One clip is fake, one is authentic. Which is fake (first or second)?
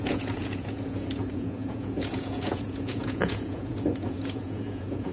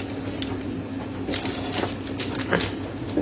first